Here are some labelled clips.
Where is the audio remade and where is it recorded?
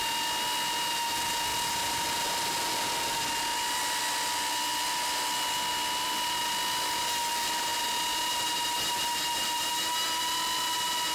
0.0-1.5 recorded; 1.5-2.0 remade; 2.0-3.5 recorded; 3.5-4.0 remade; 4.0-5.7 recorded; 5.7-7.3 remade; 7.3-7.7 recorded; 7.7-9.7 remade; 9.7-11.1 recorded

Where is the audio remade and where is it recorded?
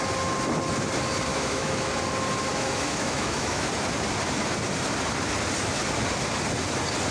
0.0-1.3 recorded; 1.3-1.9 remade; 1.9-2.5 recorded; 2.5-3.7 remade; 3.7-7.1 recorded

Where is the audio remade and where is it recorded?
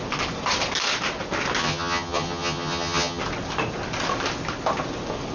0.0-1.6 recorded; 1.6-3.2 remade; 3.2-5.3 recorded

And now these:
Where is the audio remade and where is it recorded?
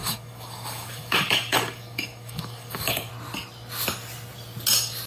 0.0-3.1 remade; 3.1-5.1 recorded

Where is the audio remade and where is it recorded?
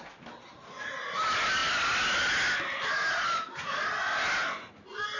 0.0-5.2 recorded